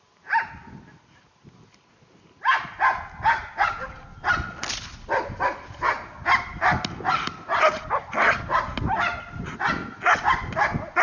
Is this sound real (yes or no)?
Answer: yes